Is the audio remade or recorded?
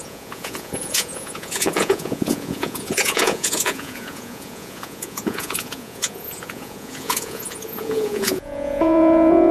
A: remade